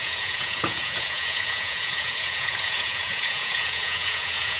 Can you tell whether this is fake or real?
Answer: fake